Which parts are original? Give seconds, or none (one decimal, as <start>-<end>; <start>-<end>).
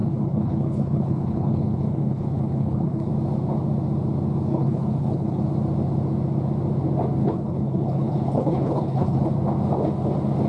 3.1-4.5; 5.4-7.2; 9.3-10.5